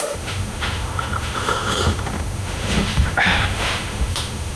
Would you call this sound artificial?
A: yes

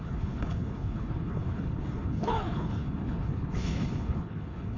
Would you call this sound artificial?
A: yes